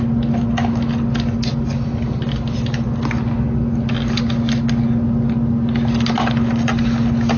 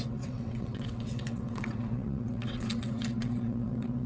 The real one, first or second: first